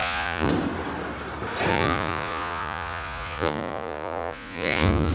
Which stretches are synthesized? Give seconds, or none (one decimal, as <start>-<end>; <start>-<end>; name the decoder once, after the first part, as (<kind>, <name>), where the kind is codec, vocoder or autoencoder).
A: 0.0-0.5 (vocoder, Vocos); 1.7-5.1